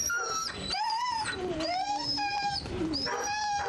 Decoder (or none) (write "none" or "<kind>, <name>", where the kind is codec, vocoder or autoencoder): vocoder, BigVGAN v2